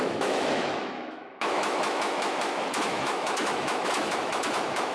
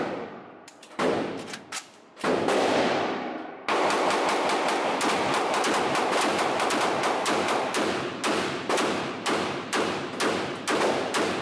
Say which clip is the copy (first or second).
first